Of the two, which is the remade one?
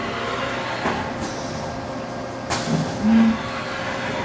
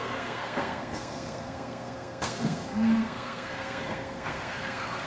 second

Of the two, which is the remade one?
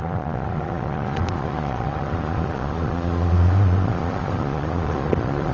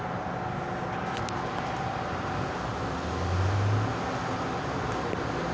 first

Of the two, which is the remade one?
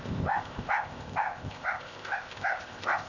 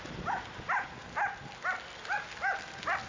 first